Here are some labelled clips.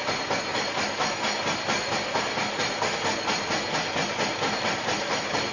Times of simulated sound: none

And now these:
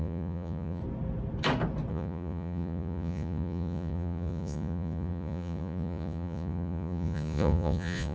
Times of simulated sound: 0.0-0.8 (vocoder, Vocos); 1.9-8.1

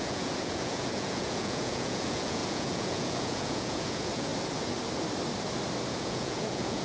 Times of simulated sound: 0.0-4.3 (vocoder, Vocos); 5.9-6.8